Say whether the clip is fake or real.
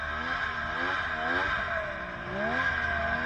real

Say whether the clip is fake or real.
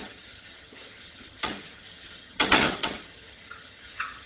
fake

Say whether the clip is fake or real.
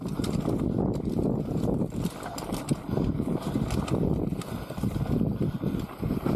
real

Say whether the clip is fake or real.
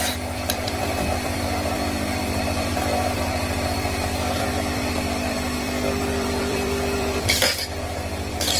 fake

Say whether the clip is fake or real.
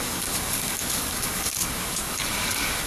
fake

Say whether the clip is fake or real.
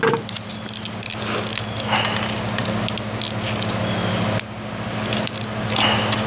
real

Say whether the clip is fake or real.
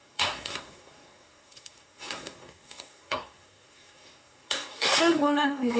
fake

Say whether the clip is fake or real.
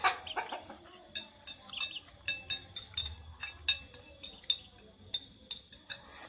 real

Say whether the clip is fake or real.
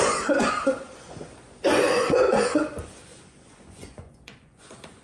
fake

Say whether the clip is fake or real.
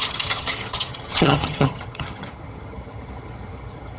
fake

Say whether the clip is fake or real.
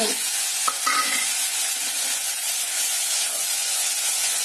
fake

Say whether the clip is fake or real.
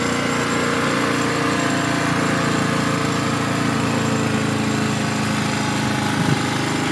real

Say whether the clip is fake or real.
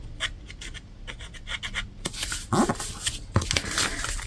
real